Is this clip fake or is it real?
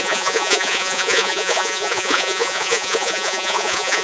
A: fake